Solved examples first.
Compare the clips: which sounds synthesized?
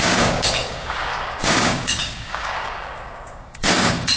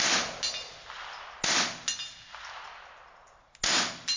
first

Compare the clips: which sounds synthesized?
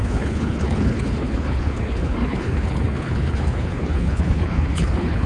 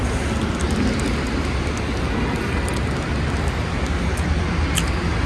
first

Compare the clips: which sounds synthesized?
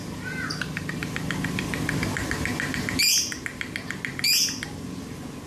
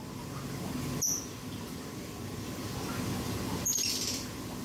second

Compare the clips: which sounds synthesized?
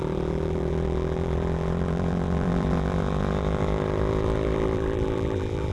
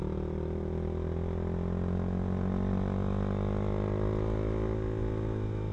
first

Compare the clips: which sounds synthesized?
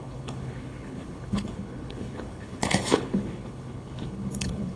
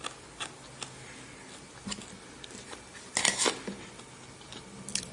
first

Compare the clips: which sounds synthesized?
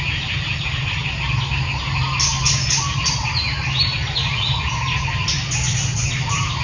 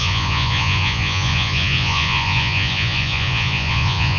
second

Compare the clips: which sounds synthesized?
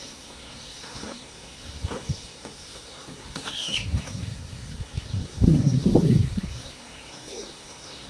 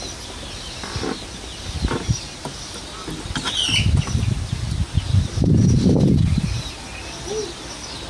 first